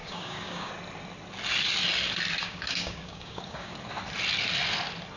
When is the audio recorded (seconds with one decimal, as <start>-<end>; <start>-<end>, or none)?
0.7-2.4; 3.7-5.2